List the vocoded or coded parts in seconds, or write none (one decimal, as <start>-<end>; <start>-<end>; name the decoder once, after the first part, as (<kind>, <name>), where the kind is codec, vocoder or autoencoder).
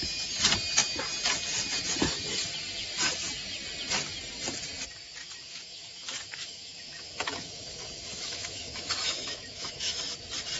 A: 5.2-10.0 (autoencoder, DAC-VAE)